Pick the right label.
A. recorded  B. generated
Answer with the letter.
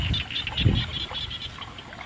A